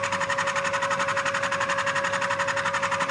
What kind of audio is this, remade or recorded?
recorded